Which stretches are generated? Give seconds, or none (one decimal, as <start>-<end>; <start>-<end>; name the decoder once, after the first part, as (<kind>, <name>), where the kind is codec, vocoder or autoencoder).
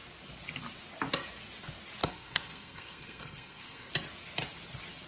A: 2.0-3.9 (codec, SNAC)